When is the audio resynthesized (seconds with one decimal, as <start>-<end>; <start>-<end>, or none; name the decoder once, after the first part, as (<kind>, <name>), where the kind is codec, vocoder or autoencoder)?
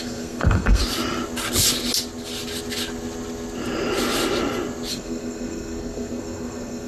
0.0-0.8 (codec, SNAC); 4.9-6.9